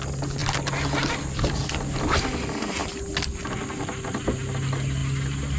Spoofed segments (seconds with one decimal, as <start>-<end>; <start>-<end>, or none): none